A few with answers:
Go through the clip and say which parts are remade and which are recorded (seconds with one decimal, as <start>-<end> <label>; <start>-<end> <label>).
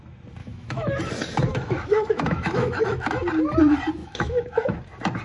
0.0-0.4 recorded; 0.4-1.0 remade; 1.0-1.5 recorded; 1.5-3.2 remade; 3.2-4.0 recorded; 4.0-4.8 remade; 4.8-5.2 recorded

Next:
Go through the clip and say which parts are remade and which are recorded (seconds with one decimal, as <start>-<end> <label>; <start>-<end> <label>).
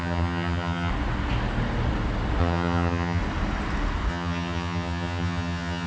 0.0-0.9 remade; 0.9-2.4 recorded; 2.4-3.2 remade; 3.2-4.1 recorded; 4.1-5.9 remade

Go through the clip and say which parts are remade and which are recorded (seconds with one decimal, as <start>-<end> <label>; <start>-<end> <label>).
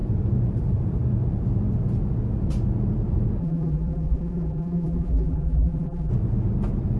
0.0-3.4 recorded; 3.4-6.1 remade; 6.1-7.0 recorded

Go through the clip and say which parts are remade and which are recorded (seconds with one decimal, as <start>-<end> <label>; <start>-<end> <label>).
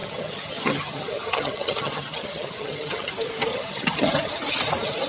0.0-3.1 remade; 3.1-3.5 recorded; 3.5-4.1 remade; 4.1-5.1 recorded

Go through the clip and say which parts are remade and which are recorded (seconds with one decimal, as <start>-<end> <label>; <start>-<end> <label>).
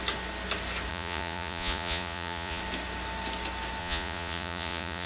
0.0-0.9 recorded; 0.9-2.6 remade; 2.6-3.8 recorded; 3.8-5.1 remade